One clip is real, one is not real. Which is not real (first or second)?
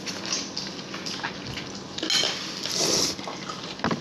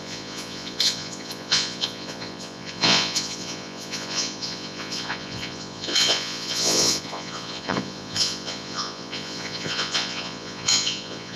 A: second